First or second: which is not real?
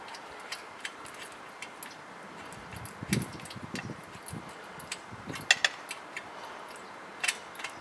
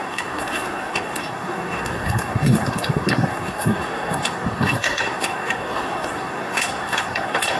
second